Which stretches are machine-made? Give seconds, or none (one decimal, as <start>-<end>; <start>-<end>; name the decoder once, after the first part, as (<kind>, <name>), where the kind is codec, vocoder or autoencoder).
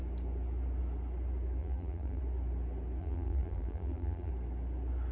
1.6-2.2 (vocoder, BigVGAN v2); 3.0-4.3